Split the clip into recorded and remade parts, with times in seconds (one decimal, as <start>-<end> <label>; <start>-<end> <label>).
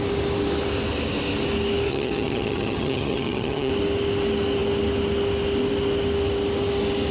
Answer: 0.0-1.9 recorded; 1.9-3.7 remade; 3.7-7.1 recorded